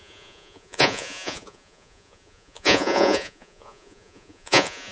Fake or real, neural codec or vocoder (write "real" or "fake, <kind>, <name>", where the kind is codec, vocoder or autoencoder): fake, vocoder, Vocos